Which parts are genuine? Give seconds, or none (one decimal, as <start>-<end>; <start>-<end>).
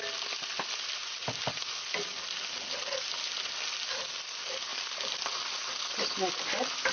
0.0-4.7